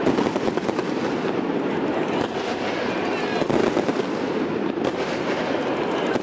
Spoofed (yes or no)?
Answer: no